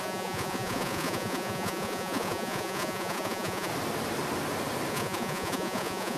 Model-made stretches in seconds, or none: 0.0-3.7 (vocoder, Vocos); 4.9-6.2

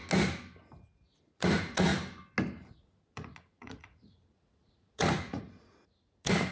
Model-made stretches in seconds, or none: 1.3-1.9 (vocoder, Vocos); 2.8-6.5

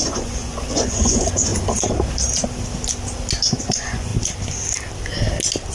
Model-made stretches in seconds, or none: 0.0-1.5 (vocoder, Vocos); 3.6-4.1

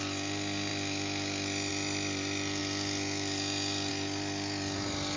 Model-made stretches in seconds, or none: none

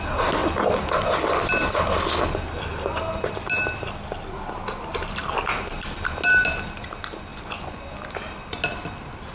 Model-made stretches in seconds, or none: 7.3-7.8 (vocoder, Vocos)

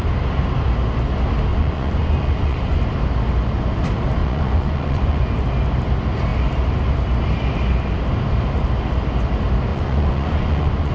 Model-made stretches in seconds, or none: 1.5-2.8 (vocoder, Vocos); 4.2-5.2; 9.7-10.9

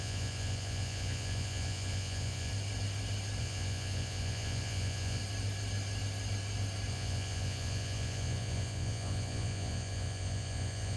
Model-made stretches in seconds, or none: 0.0-2.5 (vocoder, Vocos); 3.4-5.2; 6.9-11.0